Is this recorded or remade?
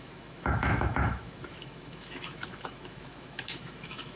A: remade